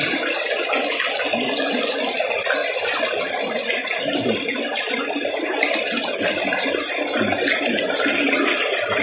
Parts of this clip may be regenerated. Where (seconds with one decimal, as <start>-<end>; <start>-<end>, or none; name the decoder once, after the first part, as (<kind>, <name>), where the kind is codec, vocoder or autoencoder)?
none